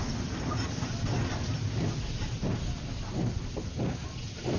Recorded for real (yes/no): yes